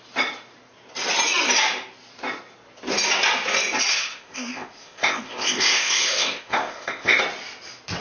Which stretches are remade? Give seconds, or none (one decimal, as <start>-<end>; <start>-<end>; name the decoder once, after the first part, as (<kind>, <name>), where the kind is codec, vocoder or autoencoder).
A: 3.9-7.2 (codec, ZipCodec)